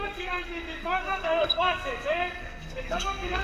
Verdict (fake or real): fake